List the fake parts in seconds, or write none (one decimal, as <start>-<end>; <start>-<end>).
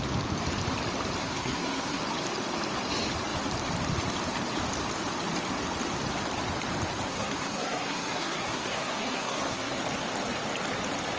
1.2-2.0; 7.1-9.8